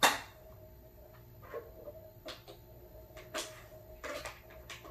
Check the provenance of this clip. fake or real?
real